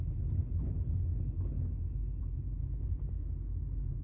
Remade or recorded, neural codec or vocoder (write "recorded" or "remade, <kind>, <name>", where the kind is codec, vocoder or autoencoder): recorded